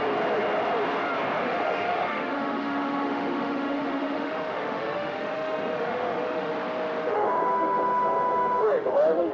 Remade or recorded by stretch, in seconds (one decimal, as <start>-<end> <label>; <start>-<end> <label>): 0.0-1.4 recorded; 1.4-6.5 remade; 6.5-7.0 recorded; 7.0-9.3 remade